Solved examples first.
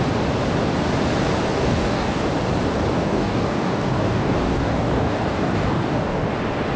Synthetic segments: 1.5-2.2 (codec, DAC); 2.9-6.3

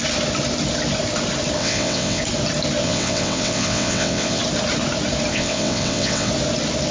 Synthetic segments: 1.6-2.2 (vocoder, WaveNeXt); 2.8-4.4; 5.3-6.3

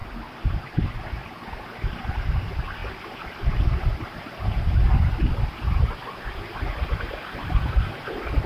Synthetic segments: 0.0-0.9 (vocoder, BigVGAN v2)